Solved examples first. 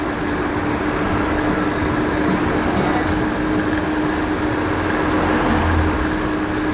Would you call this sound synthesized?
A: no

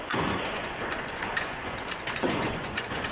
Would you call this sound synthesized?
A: yes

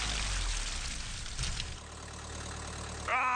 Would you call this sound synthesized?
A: no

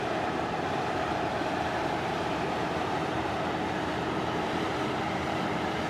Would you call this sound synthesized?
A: yes